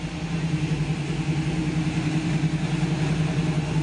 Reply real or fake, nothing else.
real